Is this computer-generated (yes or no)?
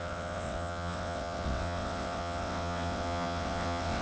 yes